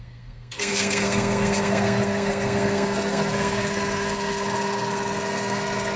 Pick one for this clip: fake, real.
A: fake